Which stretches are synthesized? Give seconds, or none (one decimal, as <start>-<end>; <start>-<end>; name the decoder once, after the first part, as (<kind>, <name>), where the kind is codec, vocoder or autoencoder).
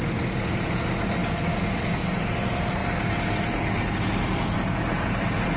none